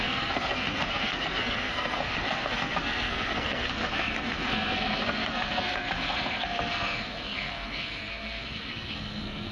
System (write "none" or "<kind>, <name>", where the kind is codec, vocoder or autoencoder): codec, SNAC